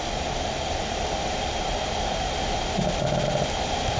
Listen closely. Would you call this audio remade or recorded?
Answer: recorded